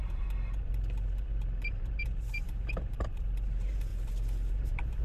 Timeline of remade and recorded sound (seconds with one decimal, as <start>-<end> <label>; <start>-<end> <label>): 0.0-3.9 remade; 3.9-4.5 recorded; 4.5-5.0 remade